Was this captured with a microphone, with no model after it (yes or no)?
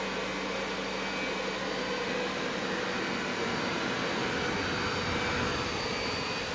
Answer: yes